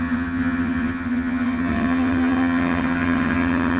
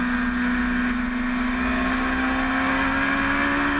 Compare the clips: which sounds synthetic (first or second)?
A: first